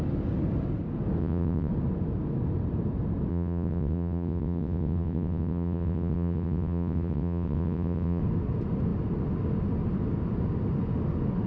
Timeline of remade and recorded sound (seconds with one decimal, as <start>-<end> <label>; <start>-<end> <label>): 0.0-1.2 recorded; 1.2-1.7 remade; 1.7-3.3 recorded; 3.3-8.2 remade; 8.2-11.5 recorded